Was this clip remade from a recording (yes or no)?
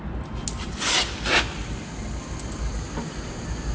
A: no